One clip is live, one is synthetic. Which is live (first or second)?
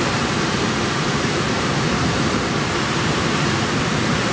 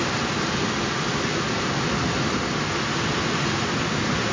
second